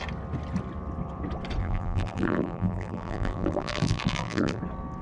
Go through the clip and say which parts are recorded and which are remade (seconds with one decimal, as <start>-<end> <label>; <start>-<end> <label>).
0.0-1.6 recorded; 1.6-4.6 remade; 4.6-5.0 recorded